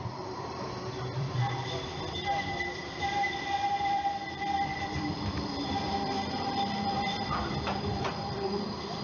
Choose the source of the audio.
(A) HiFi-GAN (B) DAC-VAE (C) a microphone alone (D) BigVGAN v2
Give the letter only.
D